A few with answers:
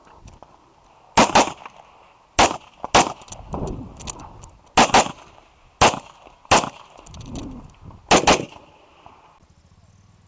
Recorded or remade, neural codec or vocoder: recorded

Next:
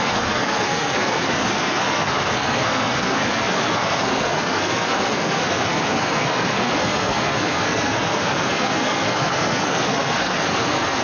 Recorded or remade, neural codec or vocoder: remade, codec, SNAC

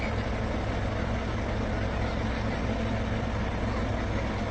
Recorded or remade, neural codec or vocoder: recorded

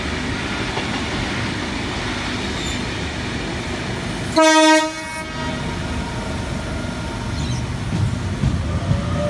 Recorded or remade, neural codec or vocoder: recorded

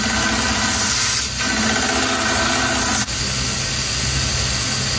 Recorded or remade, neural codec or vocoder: recorded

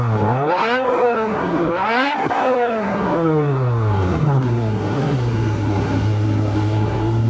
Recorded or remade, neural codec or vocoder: remade, codec, SNAC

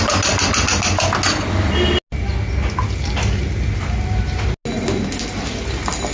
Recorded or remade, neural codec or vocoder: recorded